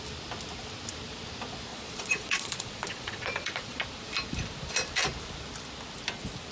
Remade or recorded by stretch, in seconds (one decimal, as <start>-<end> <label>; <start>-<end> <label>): 0.0-1.7 recorded; 1.7-3.8 remade; 3.8-6.5 recorded